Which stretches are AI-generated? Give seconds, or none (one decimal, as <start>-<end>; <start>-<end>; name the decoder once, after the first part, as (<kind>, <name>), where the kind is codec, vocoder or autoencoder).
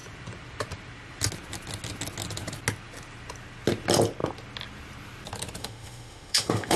5.6-6.8 (autoencoder, DAC-VAE)